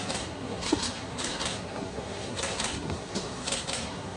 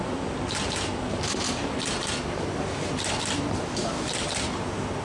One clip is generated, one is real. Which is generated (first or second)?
first